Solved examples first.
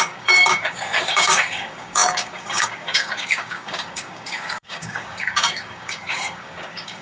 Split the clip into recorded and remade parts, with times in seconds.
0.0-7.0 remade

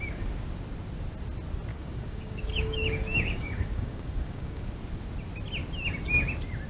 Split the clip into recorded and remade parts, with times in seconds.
0.0-1.7 recorded; 1.7-4.6 remade; 4.6-6.7 recorded

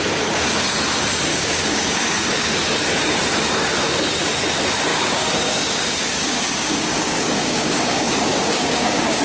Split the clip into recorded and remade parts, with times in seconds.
0.0-1.3 recorded; 1.3-2.0 remade; 2.0-4.9 recorded; 4.9-9.2 remade

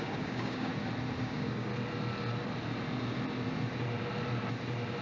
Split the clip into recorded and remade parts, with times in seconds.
0.0-0.7 remade; 0.7-1.2 recorded; 1.2-1.7 remade; 1.7-5.0 recorded